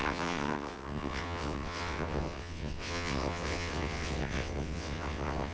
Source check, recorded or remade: remade